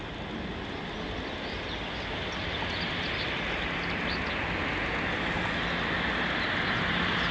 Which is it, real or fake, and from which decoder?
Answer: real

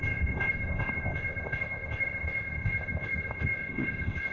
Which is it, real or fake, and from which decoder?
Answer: fake, codec, ZipCodec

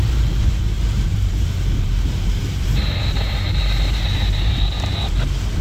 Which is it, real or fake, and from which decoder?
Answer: fake, vocoder, BigVGAN v2